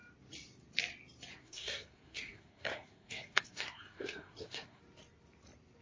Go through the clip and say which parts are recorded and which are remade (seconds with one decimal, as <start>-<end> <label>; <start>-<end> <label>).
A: 0.0-1.3 recorded; 1.3-4.8 remade; 4.8-5.8 recorded